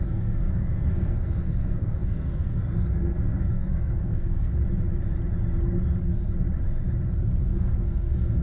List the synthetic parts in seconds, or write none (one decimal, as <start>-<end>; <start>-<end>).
0.0-4.5; 7.4-8.4